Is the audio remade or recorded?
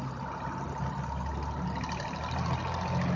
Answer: recorded